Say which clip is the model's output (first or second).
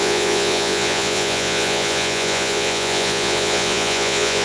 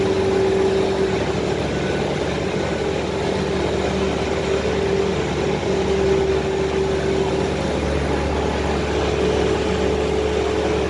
first